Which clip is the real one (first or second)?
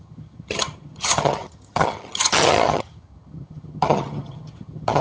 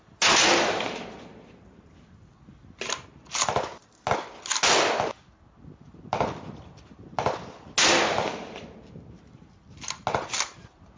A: second